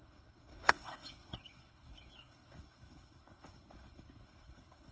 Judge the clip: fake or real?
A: fake